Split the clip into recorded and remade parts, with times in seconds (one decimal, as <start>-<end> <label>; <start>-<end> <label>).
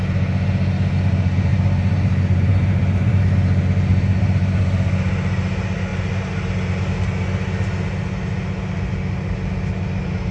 0.0-1.5 recorded; 1.5-3.2 remade; 3.2-3.9 recorded; 3.9-4.6 remade; 4.6-10.3 recorded